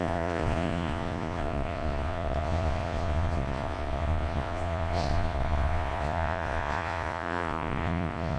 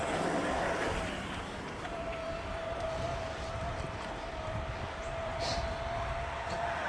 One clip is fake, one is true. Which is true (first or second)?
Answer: second